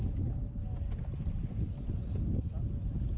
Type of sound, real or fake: real